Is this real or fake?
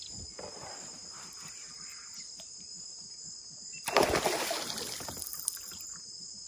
real